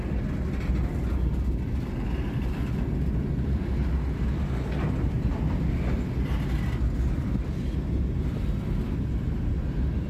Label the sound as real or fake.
real